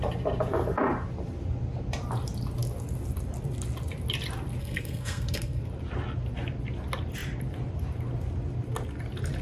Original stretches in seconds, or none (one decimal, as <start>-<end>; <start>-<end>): 0.0-4.6; 5.6-9.4